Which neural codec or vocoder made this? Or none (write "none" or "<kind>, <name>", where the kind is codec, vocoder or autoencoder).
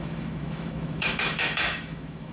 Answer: autoencoder, DAC-VAE